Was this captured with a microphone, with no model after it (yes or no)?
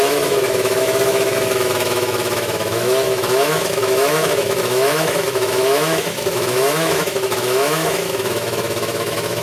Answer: no